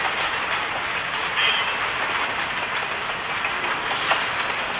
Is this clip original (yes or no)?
yes